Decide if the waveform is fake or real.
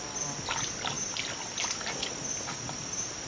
real